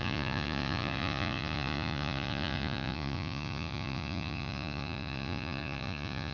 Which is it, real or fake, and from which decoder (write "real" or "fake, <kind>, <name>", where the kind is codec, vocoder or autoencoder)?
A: fake, vocoder, Vocos